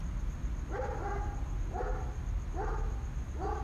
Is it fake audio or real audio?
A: real